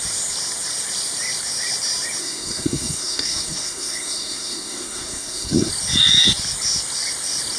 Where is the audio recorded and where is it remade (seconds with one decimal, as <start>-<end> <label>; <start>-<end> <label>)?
0.0-2.2 recorded; 2.2-5.7 remade; 5.7-7.6 recorded